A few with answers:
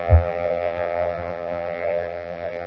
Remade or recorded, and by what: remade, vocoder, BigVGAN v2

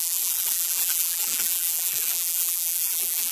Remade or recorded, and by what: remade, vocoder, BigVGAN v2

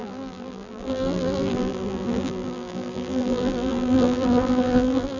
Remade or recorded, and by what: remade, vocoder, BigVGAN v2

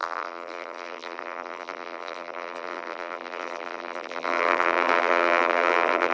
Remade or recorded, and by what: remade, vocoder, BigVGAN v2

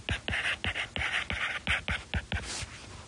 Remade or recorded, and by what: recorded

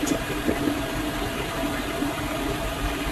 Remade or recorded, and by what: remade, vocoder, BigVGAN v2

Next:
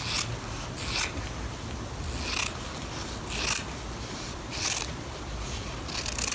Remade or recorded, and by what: recorded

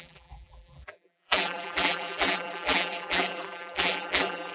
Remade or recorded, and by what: remade, vocoder, BigVGAN v2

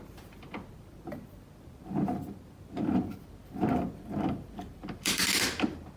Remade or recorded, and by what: remade, vocoder, BigVGAN v2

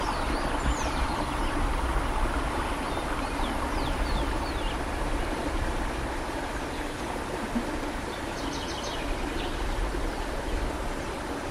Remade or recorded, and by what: recorded